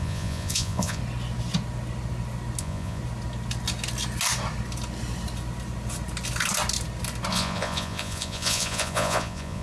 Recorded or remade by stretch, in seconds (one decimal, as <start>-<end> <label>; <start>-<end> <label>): 0.0-1.0 remade; 1.0-2.6 recorded; 2.6-3.0 remade; 3.0-7.3 recorded; 7.3-9.6 remade